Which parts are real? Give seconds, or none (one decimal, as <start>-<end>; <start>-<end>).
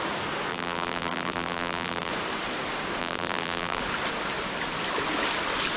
0.0-0.5; 2.1-3.0; 3.8-5.8